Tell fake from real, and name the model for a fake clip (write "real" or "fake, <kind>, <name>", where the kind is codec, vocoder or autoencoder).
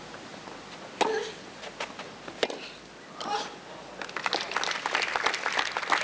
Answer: real